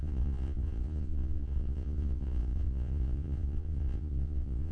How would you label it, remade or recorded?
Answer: remade